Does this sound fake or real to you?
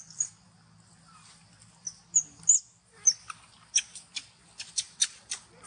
real